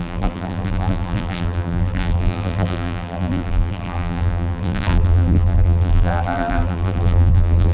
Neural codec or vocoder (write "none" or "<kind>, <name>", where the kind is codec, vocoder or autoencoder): vocoder, BigVGAN v2